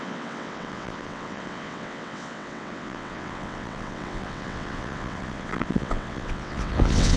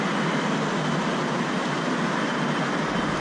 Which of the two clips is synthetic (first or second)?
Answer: first